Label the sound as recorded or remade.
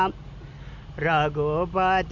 recorded